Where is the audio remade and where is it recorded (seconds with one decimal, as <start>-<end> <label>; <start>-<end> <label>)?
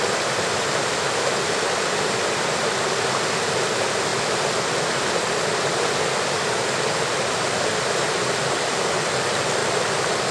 0.0-10.3 recorded